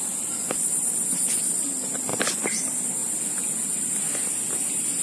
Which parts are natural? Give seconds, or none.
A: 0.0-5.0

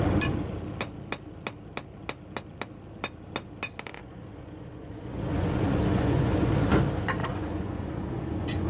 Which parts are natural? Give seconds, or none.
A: 0.0-3.9; 6.5-7.2

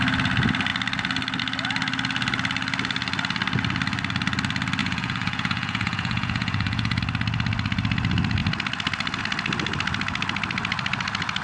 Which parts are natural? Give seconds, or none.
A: 0.0-4.8; 7.0-11.4

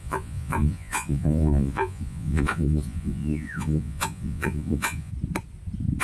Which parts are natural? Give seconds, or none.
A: 5.1-6.0